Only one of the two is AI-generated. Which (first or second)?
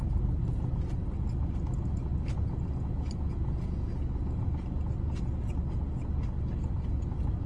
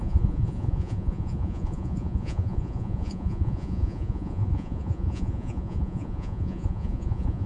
second